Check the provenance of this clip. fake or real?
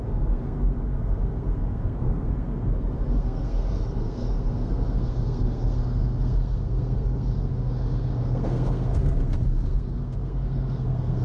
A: fake